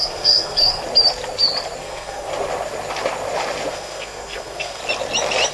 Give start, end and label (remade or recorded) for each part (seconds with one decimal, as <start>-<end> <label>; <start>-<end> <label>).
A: 0.0-0.8 remade; 0.8-1.8 recorded; 1.8-2.3 remade; 2.3-3.7 recorded; 3.7-4.8 remade; 4.8-5.5 recorded